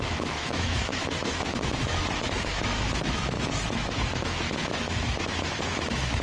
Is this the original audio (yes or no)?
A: no